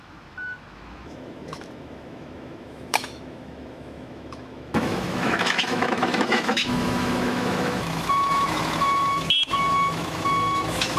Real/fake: fake